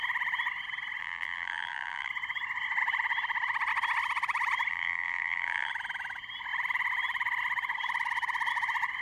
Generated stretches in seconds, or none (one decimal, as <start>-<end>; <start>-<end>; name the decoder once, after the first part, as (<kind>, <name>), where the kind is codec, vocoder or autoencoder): 1.0-2.1 (vocoder, BigVGAN v2); 4.7-5.7